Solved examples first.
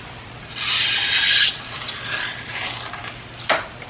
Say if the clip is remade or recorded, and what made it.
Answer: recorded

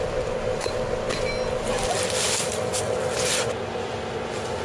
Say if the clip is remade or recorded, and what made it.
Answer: recorded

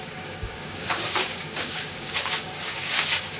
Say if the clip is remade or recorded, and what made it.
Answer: remade, codec, DAC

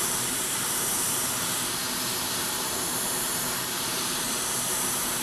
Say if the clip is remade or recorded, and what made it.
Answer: remade, vocoder, BigVGAN v2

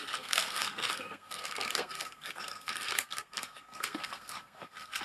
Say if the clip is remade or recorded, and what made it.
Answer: remade, codec, SNAC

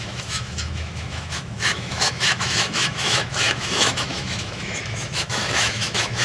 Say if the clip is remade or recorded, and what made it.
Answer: remade, autoencoder, DAC-VAE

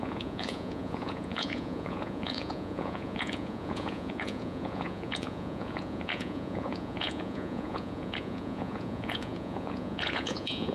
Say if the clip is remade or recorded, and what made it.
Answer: remade, vocoder, Vocos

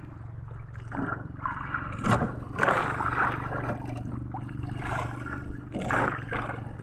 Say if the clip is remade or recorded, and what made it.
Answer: recorded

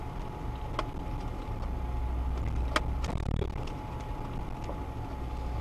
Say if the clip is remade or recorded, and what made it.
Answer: recorded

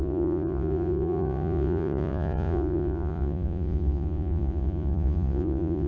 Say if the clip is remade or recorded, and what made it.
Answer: remade, vocoder, Vocos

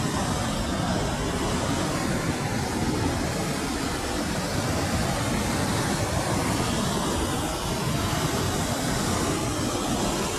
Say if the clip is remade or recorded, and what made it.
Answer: recorded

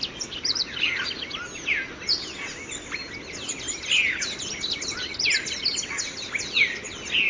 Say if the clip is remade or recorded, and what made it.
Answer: recorded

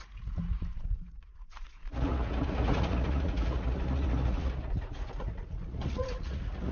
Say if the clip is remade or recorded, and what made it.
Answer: remade, vocoder, Vocos